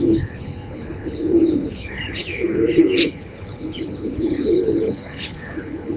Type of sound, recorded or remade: remade